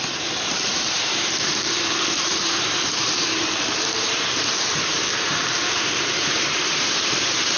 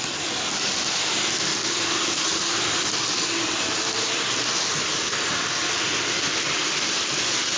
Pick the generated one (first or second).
first